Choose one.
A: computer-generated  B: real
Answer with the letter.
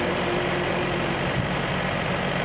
B